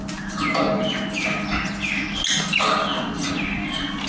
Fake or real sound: real